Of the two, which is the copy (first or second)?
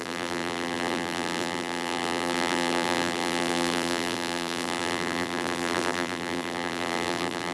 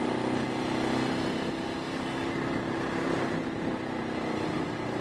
first